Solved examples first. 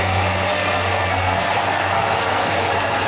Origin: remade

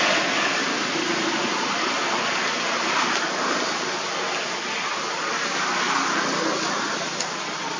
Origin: recorded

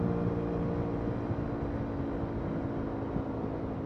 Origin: recorded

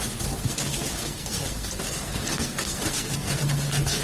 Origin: remade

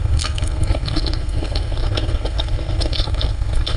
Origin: remade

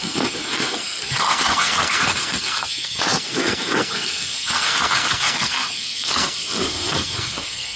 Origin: remade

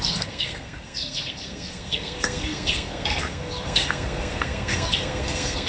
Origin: remade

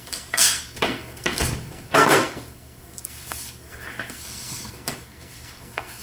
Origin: remade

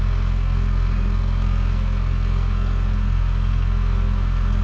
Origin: remade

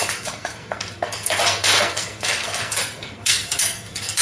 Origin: remade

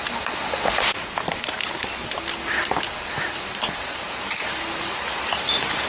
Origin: recorded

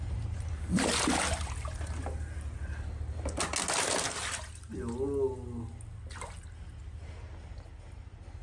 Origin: recorded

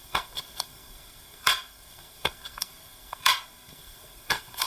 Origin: remade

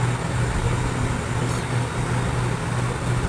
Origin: recorded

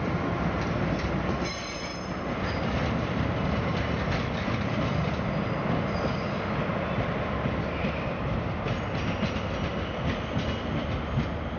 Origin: recorded